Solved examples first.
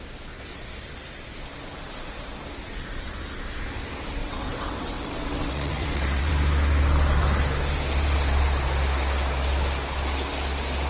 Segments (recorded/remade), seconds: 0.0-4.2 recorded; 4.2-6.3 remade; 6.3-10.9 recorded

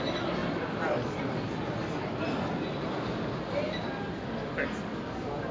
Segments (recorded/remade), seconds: 0.0-5.5 recorded

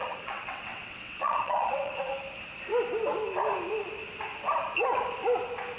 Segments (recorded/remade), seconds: 0.0-2.1 remade; 2.1-5.8 recorded

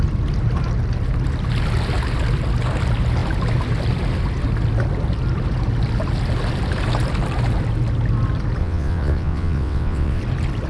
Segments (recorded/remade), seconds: 0.0-8.6 recorded; 8.6-10.2 remade; 10.2-10.7 recorded

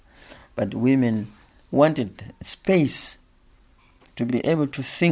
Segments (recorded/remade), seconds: 0.0-0.4 remade; 0.4-3.5 recorded; 3.5-5.1 remade

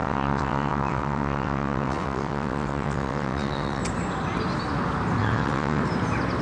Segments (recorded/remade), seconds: 0.0-3.8 remade; 3.8-5.2 recorded; 5.2-5.8 remade; 5.8-6.4 recorded

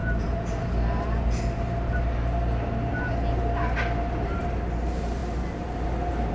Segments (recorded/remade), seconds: 0.0-6.3 recorded

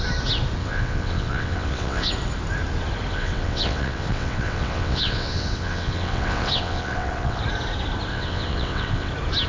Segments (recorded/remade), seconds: 0.0-0.6 recorded; 0.6-2.1 remade; 2.1-3.1 recorded; 3.1-7.4 remade; 7.4-8.1 recorded; 8.1-9.1 remade; 9.1-9.5 recorded